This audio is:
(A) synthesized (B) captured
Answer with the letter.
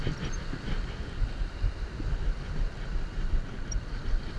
B